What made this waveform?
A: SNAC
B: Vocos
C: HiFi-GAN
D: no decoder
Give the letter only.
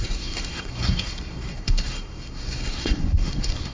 A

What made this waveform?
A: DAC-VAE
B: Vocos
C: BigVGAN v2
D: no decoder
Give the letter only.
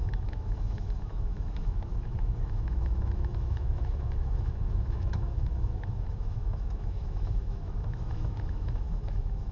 A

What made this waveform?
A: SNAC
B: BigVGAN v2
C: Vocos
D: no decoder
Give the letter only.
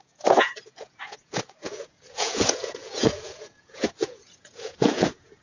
C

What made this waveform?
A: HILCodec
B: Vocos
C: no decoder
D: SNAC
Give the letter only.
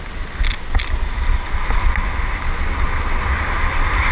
C